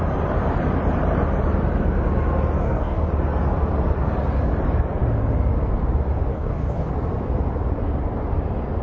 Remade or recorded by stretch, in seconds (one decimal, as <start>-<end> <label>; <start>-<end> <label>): 0.0-2.6 recorded; 2.6-3.1 remade; 3.1-6.3 recorded; 6.3-6.9 remade; 6.9-8.8 recorded

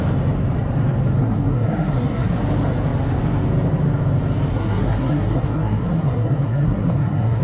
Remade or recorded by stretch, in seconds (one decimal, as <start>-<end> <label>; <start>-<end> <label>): 0.0-1.2 recorded; 1.2-2.4 remade; 2.4-4.5 recorded; 4.5-7.4 remade

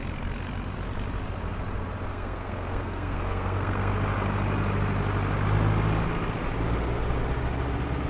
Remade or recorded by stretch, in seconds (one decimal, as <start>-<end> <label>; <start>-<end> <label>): 0.0-2.1 recorded; 2.1-3.9 remade; 3.9-8.1 recorded

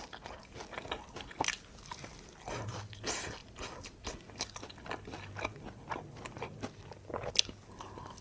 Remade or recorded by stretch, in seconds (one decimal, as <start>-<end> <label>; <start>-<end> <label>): 0.0-8.2 recorded

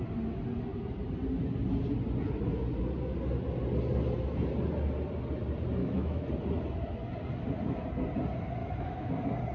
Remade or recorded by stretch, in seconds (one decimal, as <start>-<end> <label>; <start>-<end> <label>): 0.0-5.8 recorded; 5.8-6.3 remade; 6.3-8.6 recorded; 8.6-9.1 remade; 9.1-9.5 recorded

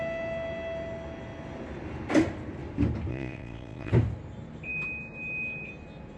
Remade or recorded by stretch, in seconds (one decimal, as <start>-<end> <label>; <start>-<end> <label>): 0.0-3.1 recorded; 3.1-3.9 remade; 3.9-6.2 recorded

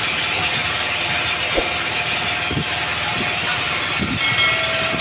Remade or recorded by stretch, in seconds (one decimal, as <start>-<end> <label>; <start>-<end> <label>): 0.0-5.0 recorded